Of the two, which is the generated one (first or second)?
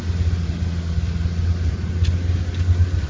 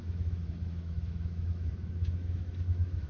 second